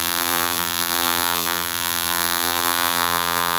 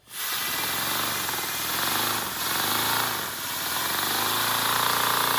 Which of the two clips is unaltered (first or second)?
second